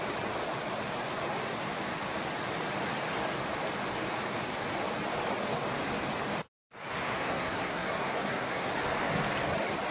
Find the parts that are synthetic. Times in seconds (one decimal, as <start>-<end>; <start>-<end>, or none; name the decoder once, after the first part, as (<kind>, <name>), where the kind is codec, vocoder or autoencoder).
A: 6.9-8.7 (codec, SNAC)